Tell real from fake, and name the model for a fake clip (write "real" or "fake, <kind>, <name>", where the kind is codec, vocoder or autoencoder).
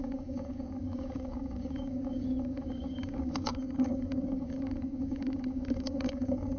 fake, codec, DAC